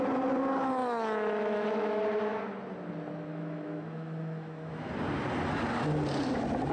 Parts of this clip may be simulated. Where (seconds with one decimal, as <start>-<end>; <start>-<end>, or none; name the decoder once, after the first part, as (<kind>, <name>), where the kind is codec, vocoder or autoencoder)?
0.8-2.0 (autoencoder, DAC-VAE); 3.3-4.9